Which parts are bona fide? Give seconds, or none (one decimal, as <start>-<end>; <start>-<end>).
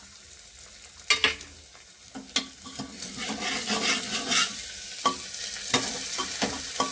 0.0-6.9